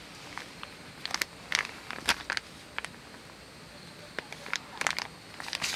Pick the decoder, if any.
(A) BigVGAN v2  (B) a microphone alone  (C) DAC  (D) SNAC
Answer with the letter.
B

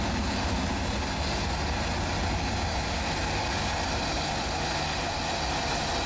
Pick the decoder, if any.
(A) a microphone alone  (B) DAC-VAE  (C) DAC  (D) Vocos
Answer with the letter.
A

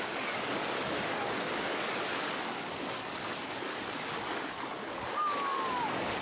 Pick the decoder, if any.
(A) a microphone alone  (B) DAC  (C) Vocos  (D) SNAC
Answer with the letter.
B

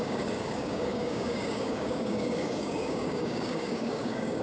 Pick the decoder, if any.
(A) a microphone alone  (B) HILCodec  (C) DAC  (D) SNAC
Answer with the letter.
C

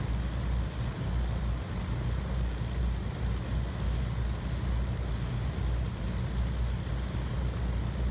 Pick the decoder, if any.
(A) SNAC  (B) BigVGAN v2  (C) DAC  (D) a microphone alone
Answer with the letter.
D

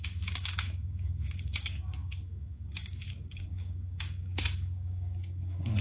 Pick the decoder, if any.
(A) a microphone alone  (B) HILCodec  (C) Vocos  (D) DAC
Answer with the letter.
D